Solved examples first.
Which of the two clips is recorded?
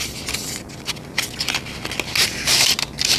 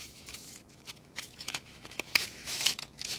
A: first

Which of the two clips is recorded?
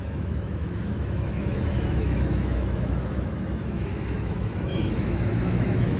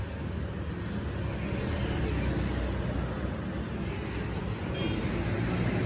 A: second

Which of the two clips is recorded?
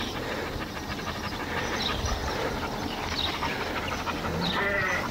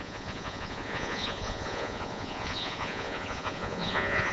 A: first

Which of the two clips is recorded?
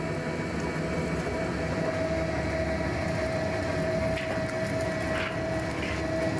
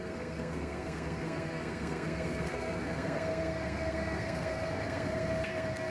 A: first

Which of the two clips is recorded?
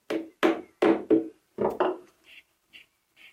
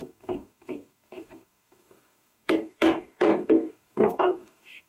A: first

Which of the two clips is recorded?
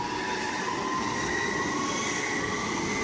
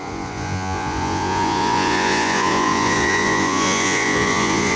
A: first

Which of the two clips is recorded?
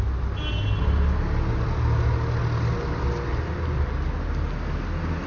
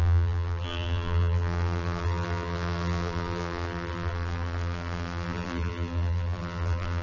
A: first